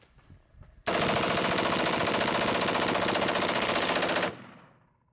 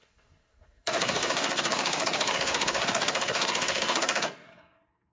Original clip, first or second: first